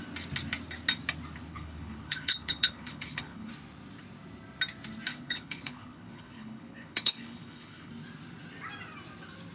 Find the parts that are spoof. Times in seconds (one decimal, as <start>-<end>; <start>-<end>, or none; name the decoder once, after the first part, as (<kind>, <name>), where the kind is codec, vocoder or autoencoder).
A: 1.5-3.5 (codec, HILCodec); 5.1-7.9